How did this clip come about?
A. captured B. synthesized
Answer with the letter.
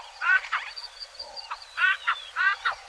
B